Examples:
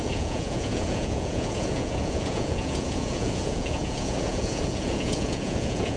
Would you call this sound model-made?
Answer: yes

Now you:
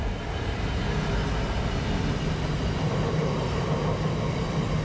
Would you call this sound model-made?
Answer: no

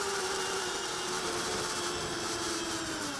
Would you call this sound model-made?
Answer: yes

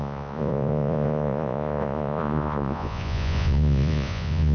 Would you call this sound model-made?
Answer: yes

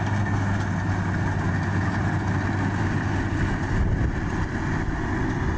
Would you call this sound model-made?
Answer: no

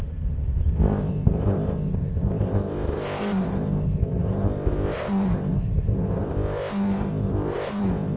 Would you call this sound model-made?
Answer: yes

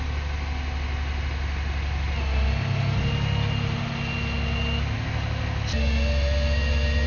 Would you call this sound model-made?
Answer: no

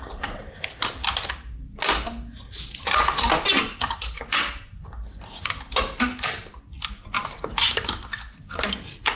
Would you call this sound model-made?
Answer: no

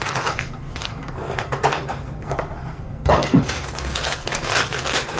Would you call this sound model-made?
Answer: yes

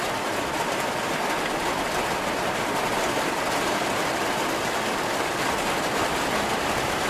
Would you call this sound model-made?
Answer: no